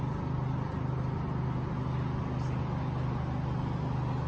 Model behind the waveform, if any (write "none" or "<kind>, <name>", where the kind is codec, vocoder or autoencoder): none